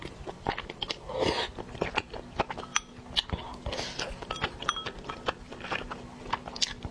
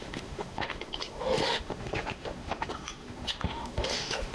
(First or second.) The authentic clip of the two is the first